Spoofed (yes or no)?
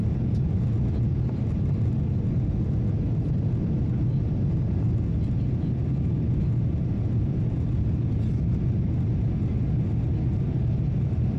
no